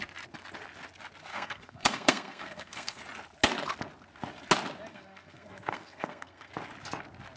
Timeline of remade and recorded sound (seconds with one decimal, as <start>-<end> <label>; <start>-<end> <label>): 0.0-1.3 recorded; 1.3-3.0 remade; 3.0-4.9 recorded; 4.9-6.5 remade; 6.5-7.4 recorded